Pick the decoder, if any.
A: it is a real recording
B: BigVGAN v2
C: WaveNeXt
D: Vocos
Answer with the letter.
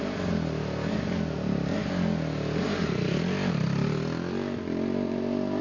A